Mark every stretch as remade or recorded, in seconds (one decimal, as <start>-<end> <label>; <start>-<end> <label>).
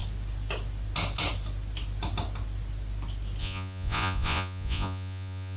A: 0.0-3.4 recorded; 3.4-5.6 remade